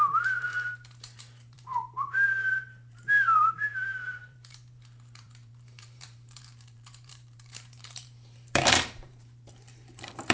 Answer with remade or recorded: remade